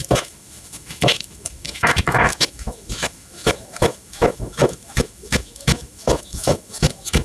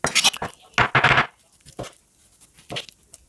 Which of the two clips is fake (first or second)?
first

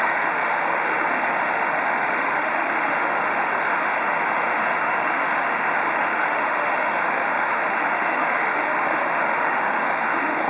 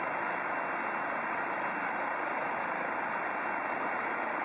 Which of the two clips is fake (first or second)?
first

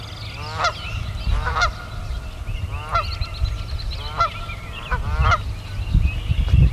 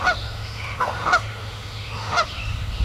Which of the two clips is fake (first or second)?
second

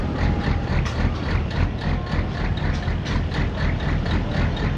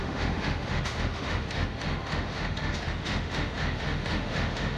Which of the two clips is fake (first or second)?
second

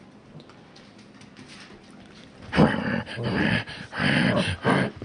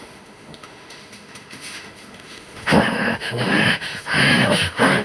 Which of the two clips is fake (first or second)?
second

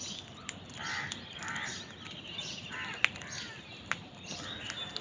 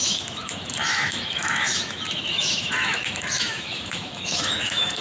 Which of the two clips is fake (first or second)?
second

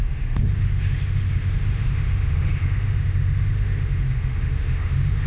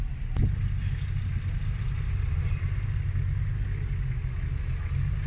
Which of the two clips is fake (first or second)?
first